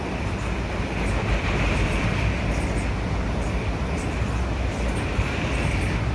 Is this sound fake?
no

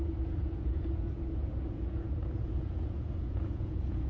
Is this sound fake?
yes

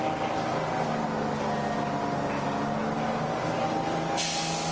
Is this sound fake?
no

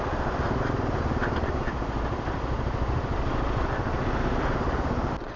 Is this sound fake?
no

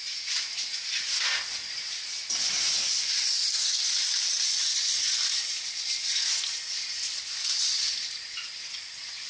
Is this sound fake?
no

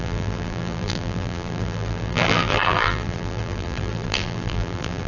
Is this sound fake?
yes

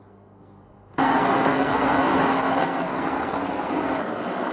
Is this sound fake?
yes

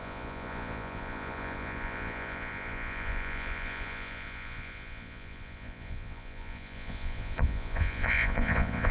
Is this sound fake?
yes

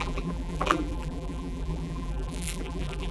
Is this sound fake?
yes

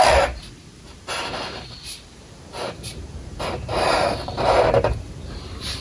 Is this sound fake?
yes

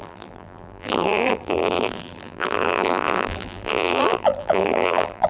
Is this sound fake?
yes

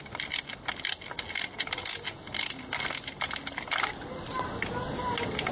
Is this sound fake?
no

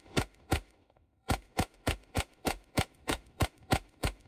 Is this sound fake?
yes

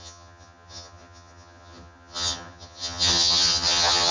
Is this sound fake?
yes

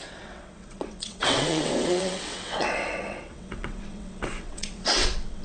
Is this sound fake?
yes